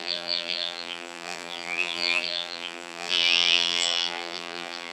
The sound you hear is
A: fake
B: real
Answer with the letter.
A